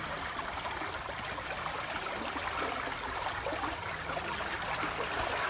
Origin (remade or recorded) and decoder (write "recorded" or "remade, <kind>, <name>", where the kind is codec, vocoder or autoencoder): recorded